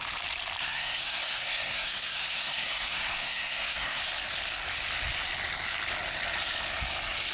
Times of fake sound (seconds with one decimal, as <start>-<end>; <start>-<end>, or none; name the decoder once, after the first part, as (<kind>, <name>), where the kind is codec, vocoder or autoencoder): 0.6-4.0 (codec, SNAC)